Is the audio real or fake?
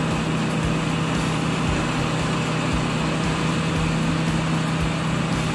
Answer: real